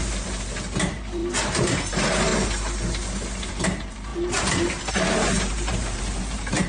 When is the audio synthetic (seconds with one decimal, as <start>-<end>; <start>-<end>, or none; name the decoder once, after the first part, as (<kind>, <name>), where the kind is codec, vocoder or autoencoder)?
0.0-2.3 (vocoder, BigVGAN v2); 3.5-6.7